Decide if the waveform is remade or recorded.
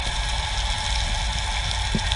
recorded